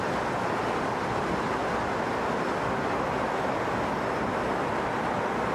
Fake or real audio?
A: real